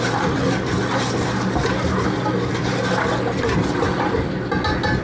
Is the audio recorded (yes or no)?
yes